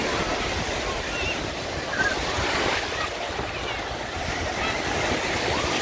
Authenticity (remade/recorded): recorded